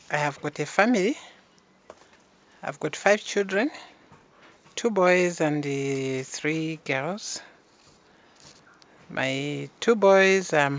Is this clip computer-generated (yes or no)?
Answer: no